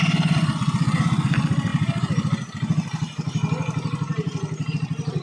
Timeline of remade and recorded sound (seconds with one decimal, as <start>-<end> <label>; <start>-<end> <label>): 0.0-5.2 recorded

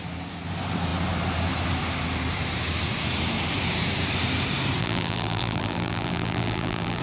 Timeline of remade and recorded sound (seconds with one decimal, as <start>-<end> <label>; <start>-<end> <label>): 0.0-4.8 recorded; 4.8-7.0 remade

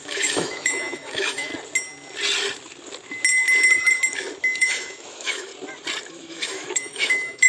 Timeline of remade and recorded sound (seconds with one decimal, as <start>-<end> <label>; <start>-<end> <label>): 0.0-1.5 remade; 1.5-4.4 recorded; 4.4-5.5 remade; 5.5-6.1 recorded; 6.1-7.5 remade